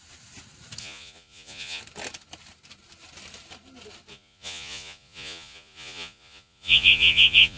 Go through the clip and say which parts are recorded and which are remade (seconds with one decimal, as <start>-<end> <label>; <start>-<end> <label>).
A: 0.0-0.8 recorded; 0.8-1.8 remade; 1.8-4.1 recorded; 4.1-7.6 remade